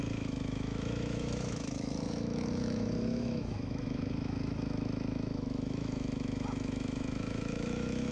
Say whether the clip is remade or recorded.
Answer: remade